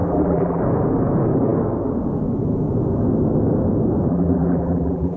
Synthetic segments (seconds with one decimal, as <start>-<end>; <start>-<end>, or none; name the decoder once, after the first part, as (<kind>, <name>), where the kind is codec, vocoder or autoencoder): 0.0-0.6 (vocoder, BigVGAN v2); 4.1-5.2